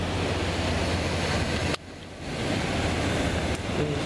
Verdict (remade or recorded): recorded